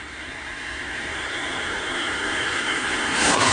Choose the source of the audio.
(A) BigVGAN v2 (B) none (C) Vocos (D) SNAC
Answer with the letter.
D